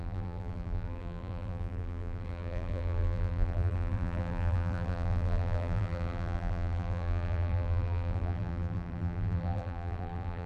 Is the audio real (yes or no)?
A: no